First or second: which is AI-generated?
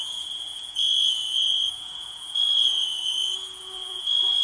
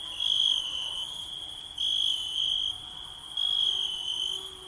first